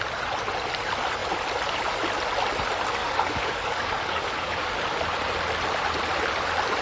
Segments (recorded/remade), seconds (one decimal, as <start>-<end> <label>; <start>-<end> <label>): 0.0-3.0 recorded; 3.0-4.7 remade; 4.7-6.8 recorded

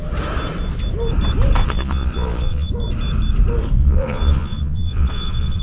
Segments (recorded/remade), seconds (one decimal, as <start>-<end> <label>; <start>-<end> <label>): 0.0-1.6 recorded; 1.6-2.7 remade; 2.7-3.8 recorded; 3.8-5.6 remade

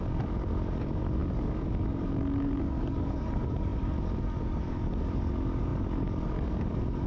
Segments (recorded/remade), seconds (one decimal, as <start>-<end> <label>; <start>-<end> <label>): 0.0-7.1 remade